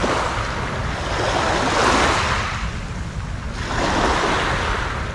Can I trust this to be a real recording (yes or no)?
yes